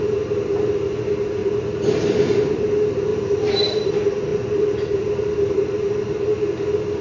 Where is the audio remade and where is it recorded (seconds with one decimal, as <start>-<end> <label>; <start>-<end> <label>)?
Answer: 0.0-1.4 recorded; 1.4-2.6 remade; 2.6-3.1 recorded; 3.1-3.9 remade; 3.9-4.3 recorded; 4.3-5.7 remade; 5.7-7.0 recorded